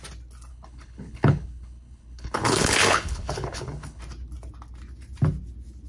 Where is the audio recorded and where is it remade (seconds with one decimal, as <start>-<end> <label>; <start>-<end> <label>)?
0.0-0.5 recorded; 0.5-4.0 remade; 4.0-5.9 recorded